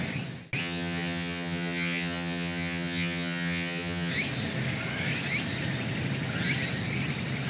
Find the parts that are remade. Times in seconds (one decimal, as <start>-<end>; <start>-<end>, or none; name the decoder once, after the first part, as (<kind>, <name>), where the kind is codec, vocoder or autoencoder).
0.6-4.1 (vocoder, HiFi-GAN)